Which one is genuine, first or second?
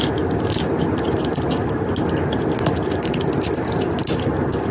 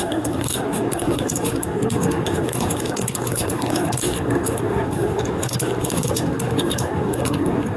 first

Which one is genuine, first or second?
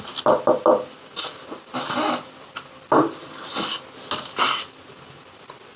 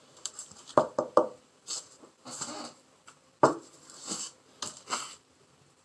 first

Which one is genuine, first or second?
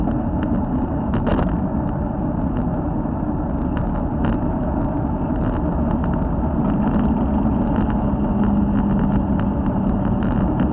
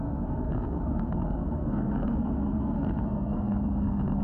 first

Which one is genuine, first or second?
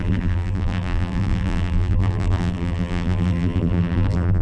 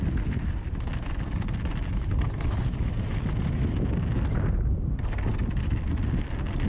second